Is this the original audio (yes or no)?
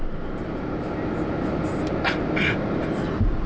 yes